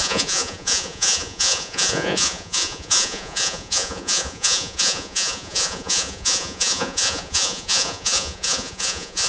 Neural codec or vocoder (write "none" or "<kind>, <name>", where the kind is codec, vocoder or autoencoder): vocoder, Vocos